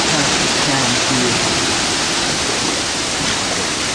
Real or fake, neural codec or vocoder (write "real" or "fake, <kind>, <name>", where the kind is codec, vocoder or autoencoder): real